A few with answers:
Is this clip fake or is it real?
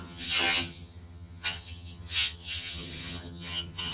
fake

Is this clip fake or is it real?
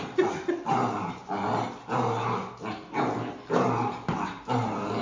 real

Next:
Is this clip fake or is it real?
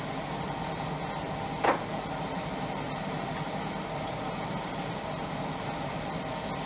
real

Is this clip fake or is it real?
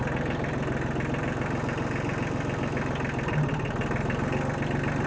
real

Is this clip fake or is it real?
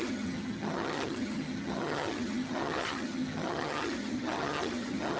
fake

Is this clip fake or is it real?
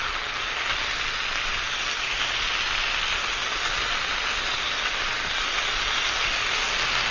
real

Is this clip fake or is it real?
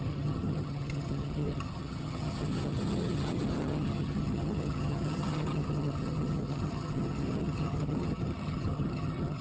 fake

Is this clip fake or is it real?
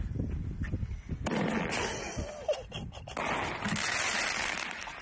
real